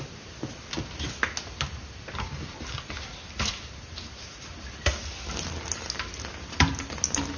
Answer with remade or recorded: recorded